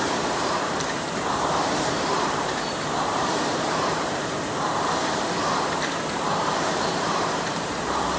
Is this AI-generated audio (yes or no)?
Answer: yes